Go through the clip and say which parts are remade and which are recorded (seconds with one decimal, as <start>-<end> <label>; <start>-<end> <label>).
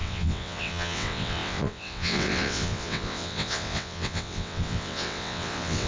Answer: 0.0-5.9 remade